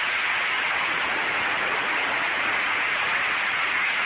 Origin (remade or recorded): remade